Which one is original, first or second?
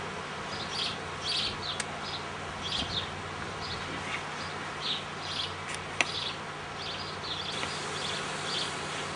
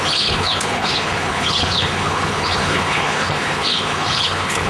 first